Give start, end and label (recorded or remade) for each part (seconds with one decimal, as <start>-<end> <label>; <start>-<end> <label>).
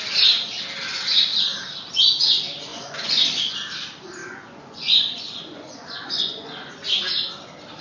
0.0-2.7 recorded; 2.7-3.5 remade; 3.5-4.2 recorded; 4.2-6.7 remade; 6.7-7.8 recorded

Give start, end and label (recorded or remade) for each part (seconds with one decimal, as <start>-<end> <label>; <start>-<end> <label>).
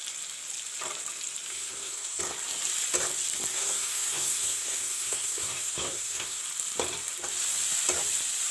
0.0-1.5 recorded; 1.5-2.2 remade; 2.2-3.5 recorded; 3.5-6.4 remade; 6.4-8.5 recorded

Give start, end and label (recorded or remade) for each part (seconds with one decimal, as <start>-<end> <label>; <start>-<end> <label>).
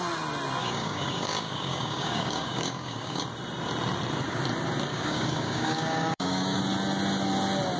0.0-0.6 recorded; 0.6-3.2 remade; 3.2-4.9 recorded; 4.9-6.6 remade; 6.6-7.8 recorded